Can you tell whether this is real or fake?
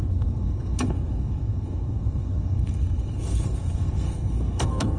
fake